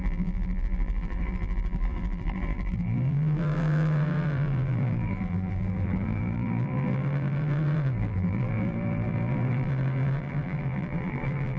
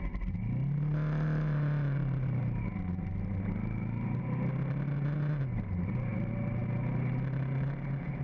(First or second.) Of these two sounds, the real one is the second